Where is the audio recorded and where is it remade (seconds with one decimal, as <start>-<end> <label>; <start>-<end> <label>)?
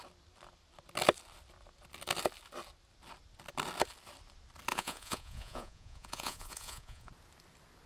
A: 0.0-4.7 recorded; 4.7-7.1 remade; 7.1-7.9 recorded